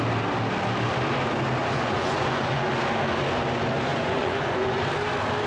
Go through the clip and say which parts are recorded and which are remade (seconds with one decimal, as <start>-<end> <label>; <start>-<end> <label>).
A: 0.0-1.6 recorded; 1.6-2.7 remade; 2.7-3.9 recorded; 3.9-4.8 remade; 4.8-5.5 recorded